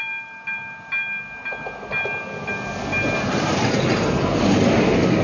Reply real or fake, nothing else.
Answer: real